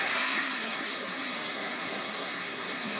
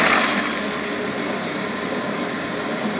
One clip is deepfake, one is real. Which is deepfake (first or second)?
first